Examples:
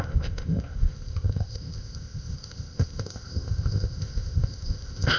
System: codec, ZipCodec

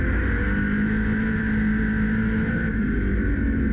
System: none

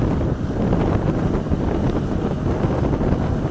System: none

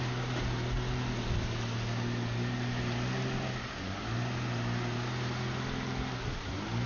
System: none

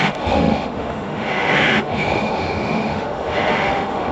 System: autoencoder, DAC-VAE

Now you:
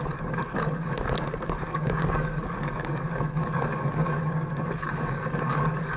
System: codec, DAC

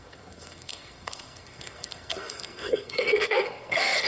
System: codec, SNAC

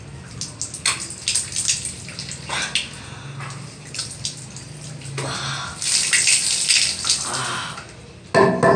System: none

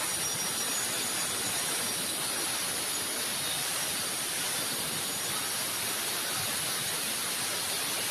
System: none